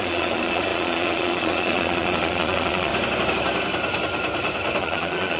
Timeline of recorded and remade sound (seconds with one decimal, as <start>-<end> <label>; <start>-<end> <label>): 0.0-2.9 remade; 2.9-4.8 recorded; 4.8-5.4 remade

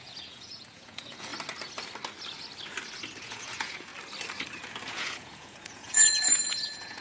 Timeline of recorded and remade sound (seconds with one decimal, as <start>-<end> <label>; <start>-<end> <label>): 0.0-1.3 remade; 1.3-3.2 recorded; 3.2-3.9 remade; 3.9-4.9 recorded; 4.9-7.0 remade

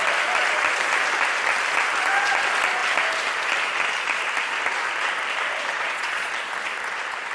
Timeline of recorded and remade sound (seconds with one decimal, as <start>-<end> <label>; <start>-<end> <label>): 0.0-5.7 recorded; 5.7-6.3 remade; 6.3-7.3 recorded

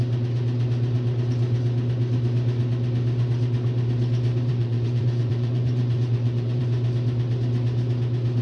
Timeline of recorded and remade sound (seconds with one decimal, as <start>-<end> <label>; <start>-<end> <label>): 0.0-4.5 recorded; 4.5-6.6 remade; 6.6-8.4 recorded